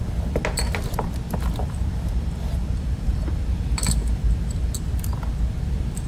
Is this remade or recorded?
remade